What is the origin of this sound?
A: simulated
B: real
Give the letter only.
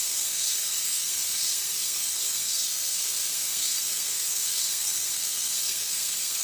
A